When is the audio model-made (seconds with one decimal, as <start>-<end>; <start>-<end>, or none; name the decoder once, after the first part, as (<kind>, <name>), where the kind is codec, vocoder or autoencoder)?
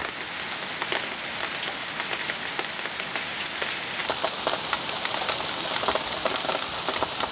none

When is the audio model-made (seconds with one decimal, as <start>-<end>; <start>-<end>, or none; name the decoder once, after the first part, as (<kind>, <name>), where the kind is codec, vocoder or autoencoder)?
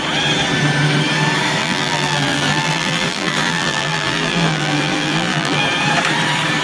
1.6-5.6 (vocoder, BigVGAN v2)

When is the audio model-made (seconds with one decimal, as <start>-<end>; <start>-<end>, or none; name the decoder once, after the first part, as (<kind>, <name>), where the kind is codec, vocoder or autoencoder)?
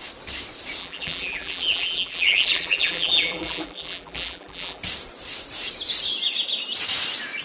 0.8-4.8 (vocoder, BigVGAN v2)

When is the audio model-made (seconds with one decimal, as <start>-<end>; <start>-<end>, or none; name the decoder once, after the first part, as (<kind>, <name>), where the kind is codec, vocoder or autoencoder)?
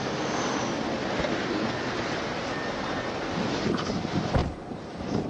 4.4-5.3 (vocoder, BigVGAN v2)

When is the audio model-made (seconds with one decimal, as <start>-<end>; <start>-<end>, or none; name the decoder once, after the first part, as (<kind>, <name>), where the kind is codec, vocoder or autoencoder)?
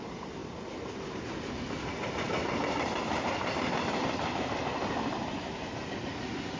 none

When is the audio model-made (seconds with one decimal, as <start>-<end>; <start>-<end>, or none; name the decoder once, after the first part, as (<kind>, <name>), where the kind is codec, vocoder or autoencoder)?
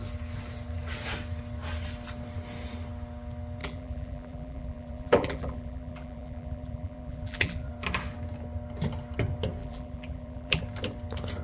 3.6-7.7 (vocoder, BigVGAN v2); 9.6-10.6